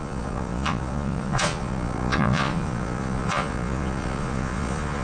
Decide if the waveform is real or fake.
fake